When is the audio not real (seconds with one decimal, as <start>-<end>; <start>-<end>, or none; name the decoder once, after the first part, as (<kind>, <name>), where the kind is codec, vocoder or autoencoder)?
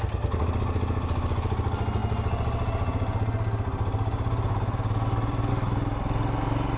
none